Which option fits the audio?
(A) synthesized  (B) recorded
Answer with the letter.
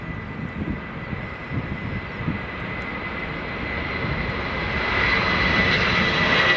B